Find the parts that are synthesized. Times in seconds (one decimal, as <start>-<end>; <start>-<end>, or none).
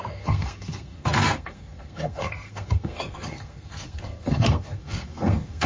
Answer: 0.0-5.7